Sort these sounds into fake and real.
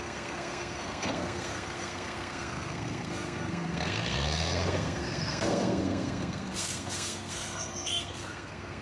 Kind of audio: fake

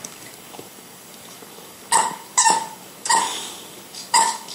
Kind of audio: fake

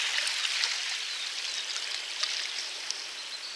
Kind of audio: real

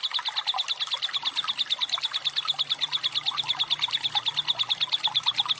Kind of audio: real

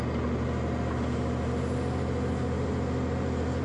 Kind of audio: real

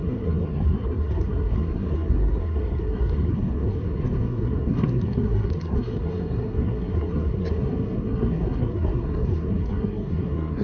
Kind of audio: fake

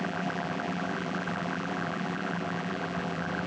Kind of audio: fake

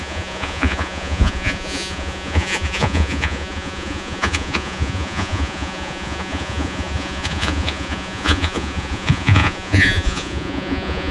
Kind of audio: fake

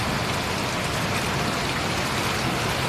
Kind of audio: real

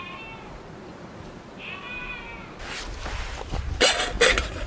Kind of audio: real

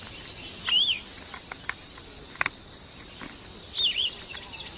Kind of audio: real